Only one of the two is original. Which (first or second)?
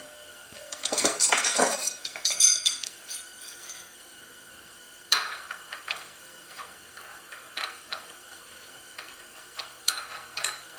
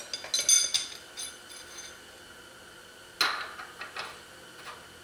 second